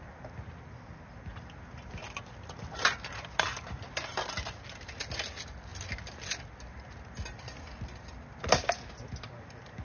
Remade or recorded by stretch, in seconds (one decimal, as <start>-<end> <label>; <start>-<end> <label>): 0.0-9.8 recorded